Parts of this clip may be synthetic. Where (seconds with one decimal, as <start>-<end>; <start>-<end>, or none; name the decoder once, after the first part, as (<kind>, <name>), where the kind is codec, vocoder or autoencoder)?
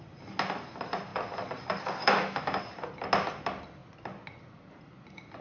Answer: 2.0-2.6 (autoencoder, DAC-VAE)